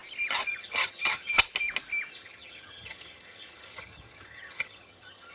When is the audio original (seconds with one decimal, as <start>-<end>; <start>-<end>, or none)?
0.0-0.5; 1.5-2.1